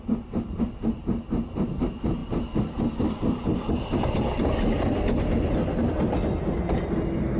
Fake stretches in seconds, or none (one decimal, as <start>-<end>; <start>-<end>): none